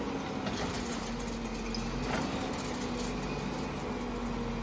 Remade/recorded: recorded